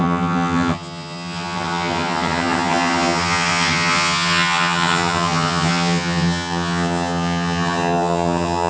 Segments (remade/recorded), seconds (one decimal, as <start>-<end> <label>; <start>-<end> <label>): 0.0-8.7 remade